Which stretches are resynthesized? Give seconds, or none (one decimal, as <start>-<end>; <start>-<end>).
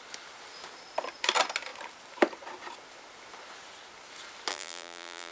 4.5-5.3